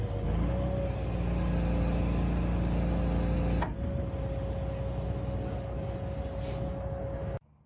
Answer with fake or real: real